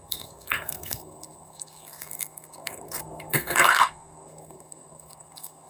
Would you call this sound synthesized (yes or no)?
yes